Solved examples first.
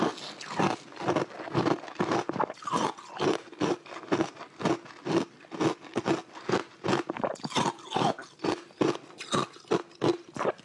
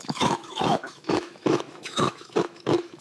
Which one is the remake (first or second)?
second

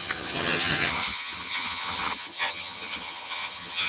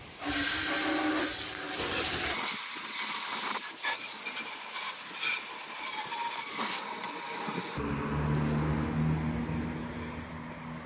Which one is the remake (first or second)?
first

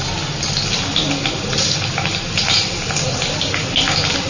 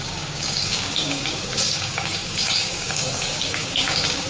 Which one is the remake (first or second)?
second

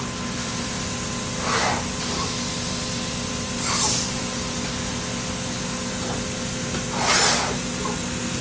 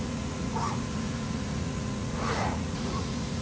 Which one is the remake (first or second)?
second